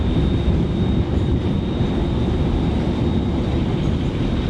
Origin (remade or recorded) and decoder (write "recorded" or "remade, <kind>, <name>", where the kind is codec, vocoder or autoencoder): recorded